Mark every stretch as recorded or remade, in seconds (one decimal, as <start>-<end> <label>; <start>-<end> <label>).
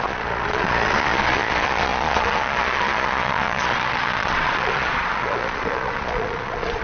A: 0.0-6.8 remade